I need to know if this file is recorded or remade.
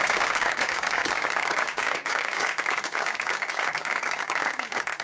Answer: remade